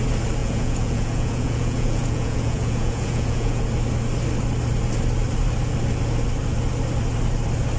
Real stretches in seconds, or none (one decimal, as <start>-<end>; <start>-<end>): 0.0-0.4; 3.6-7.8